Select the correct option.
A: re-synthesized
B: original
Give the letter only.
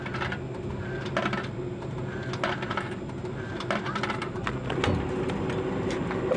B